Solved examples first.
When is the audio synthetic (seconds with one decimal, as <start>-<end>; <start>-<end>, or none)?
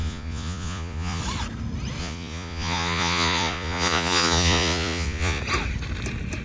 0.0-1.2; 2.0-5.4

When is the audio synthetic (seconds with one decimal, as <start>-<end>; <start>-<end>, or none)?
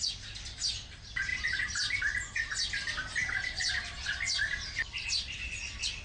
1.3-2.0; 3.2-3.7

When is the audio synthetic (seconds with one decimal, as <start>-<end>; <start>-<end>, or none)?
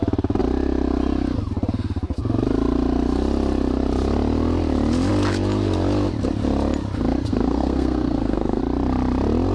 7.3-8.6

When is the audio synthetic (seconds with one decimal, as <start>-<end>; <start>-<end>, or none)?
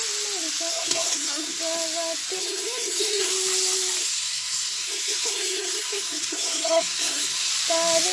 0.7-1.6; 2.4-3.3; 4.0-7.5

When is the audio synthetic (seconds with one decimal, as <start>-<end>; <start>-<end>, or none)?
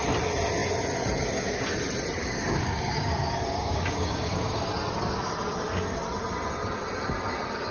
2.2-4.6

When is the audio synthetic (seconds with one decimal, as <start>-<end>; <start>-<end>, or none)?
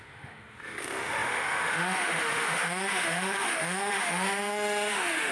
0.0-5.3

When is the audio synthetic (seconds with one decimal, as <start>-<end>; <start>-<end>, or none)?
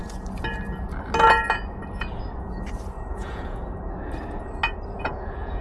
3.1-3.6; 4.9-5.6